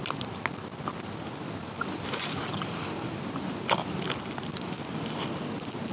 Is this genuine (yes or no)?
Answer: yes